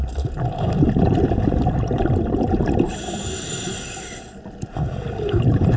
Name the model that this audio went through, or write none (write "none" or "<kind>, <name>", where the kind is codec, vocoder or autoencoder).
vocoder, BigVGAN v2